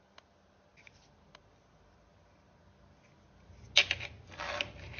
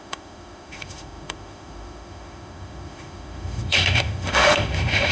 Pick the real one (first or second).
first